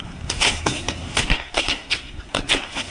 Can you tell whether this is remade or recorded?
remade